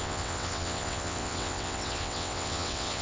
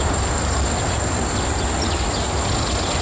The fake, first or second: first